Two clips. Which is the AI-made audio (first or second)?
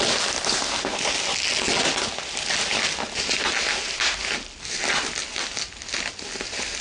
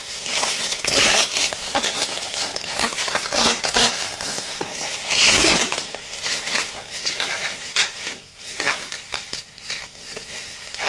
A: second